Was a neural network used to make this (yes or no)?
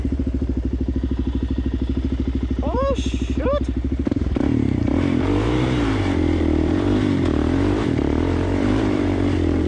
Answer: yes